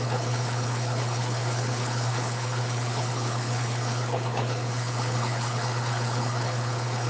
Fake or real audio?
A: fake